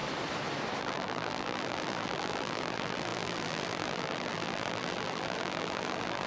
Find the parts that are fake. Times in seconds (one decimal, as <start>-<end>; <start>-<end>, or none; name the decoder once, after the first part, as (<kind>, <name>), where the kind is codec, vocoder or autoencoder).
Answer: 0.8-6.3 (vocoder, BigVGAN v2)